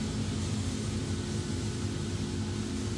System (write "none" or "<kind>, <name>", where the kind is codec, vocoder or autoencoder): none